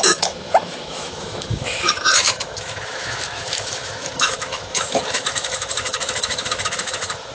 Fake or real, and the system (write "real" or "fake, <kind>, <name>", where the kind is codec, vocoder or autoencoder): fake, autoencoder, DAC-VAE